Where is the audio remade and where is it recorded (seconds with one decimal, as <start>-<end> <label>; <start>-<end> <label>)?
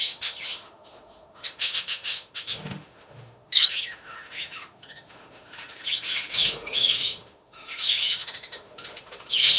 0.0-9.6 remade